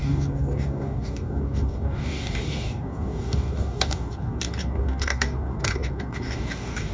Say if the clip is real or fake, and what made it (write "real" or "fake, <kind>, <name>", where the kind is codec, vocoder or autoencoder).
fake, codec, DAC